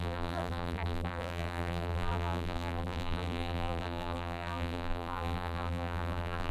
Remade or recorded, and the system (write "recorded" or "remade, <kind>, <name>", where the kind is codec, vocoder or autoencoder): remade, vocoder, BigVGAN v2